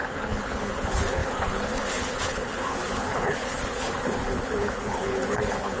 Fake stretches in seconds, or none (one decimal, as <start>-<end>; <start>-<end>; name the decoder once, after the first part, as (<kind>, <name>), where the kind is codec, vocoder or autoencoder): 0.0-5.8 (codec, HILCodec)